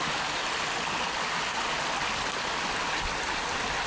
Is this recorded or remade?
recorded